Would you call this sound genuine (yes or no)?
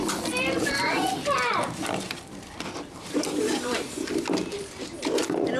no